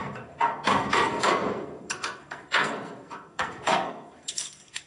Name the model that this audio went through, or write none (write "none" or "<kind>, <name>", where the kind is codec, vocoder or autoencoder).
codec, SNAC